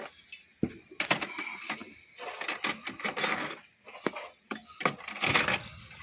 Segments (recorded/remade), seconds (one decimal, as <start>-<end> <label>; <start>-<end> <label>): 0.0-6.0 recorded